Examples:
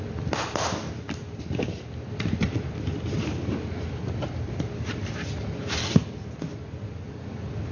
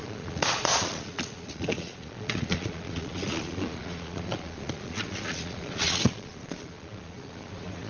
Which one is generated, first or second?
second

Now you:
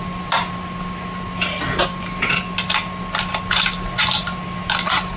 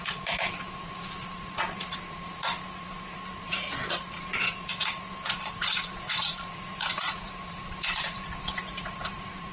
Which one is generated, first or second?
second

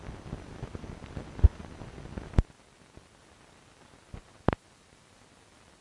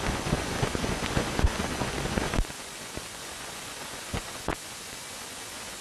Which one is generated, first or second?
second